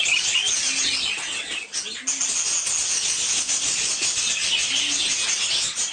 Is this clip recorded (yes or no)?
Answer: yes